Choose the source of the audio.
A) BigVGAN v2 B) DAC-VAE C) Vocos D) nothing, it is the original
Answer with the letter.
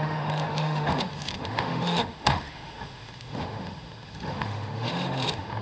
B